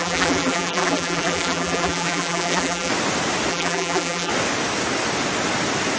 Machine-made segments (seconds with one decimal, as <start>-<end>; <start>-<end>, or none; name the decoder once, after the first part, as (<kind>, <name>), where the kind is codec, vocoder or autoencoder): 0.0-2.9 (vocoder, BigVGAN v2); 3.5-4.3